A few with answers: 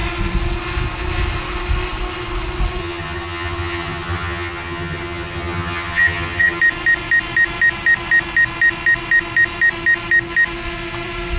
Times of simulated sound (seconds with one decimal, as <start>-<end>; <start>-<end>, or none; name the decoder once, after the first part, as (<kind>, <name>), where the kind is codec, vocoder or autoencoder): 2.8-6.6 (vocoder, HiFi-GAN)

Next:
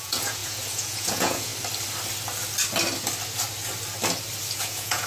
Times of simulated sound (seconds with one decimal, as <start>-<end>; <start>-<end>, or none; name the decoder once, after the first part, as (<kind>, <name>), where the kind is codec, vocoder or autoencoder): 0.0-1.5 (vocoder, Vocos); 4.6-5.1

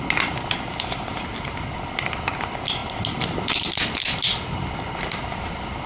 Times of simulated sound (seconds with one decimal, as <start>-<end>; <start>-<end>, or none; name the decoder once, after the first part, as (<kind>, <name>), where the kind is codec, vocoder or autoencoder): none